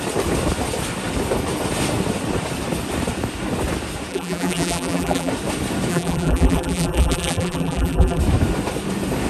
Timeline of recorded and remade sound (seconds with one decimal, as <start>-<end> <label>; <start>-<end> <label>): 0.0-4.1 recorded; 4.1-5.3 remade; 5.3-5.9 recorded; 5.9-8.2 remade; 8.2-9.3 recorded